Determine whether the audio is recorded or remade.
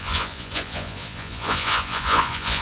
remade